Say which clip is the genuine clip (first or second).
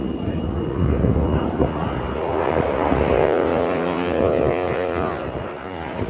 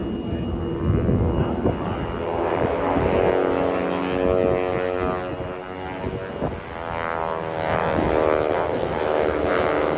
second